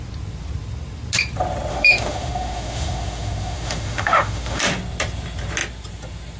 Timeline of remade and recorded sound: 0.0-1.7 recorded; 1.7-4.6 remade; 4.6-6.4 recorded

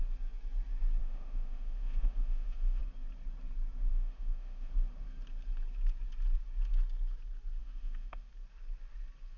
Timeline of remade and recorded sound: 0.0-1.0 recorded; 1.0-2.8 remade; 2.8-3.9 recorded; 3.9-4.7 remade; 4.7-7.6 recorded; 7.6-8.3 remade; 8.3-9.4 recorded

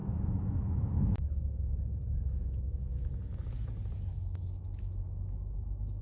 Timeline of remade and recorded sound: 0.0-3.1 remade; 3.1-4.1 recorded; 4.1-6.0 remade